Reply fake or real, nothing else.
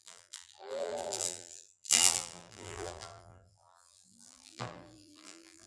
fake